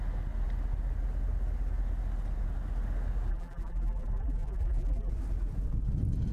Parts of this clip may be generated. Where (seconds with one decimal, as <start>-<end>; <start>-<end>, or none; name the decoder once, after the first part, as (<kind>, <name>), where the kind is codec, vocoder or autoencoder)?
3.3-5.1 (vocoder, BigVGAN v2)